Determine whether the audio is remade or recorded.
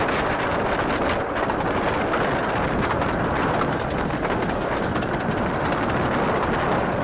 recorded